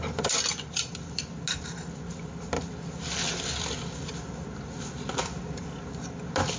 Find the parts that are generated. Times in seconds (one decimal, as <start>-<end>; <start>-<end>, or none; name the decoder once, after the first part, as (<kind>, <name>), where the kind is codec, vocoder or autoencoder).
none